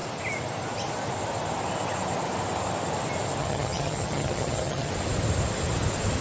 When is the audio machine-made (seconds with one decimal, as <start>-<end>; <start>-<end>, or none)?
3.4-4.9